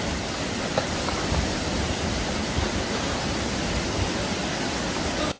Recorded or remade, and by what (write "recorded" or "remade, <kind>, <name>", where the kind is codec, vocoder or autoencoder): recorded